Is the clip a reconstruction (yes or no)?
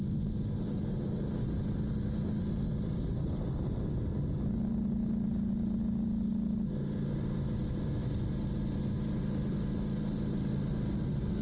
no